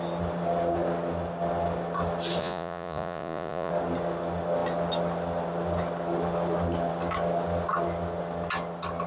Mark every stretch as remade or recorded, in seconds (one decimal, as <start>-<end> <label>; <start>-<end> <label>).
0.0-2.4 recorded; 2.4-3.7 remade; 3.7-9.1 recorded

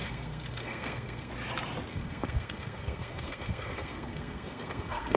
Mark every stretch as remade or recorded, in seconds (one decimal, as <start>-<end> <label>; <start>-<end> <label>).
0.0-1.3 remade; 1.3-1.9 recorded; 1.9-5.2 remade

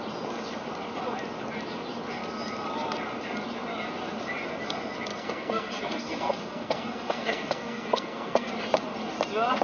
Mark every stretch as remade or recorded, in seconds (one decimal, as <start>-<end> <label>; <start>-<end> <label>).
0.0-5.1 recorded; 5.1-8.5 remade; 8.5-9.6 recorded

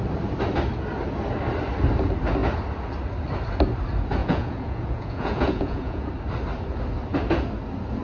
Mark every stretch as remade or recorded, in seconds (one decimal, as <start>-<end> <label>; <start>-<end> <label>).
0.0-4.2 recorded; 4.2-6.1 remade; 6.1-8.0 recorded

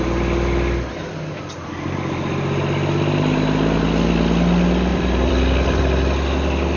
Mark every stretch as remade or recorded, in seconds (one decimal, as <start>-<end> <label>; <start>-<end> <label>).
0.0-4.9 recorded; 4.9-5.8 remade; 5.8-6.8 recorded

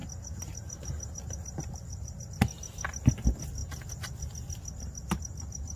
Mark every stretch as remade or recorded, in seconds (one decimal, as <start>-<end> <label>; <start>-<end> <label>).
0.0-2.3 remade; 2.3-5.8 recorded

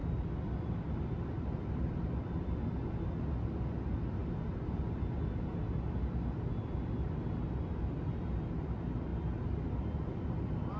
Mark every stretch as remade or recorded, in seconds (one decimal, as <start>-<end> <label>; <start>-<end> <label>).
0.0-2.6 remade; 2.6-10.8 recorded